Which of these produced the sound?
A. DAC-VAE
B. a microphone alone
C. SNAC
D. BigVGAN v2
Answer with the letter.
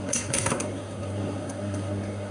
C